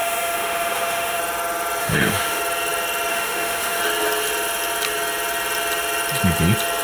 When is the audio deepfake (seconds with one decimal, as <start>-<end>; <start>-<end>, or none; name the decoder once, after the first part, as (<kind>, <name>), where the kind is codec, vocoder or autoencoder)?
0.0-1.2 (autoencoder, DAC-VAE); 1.8-2.4; 3.1-3.8